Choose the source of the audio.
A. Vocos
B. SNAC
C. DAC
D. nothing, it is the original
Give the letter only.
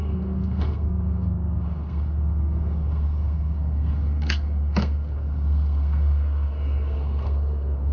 B